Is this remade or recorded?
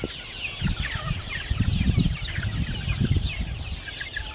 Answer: recorded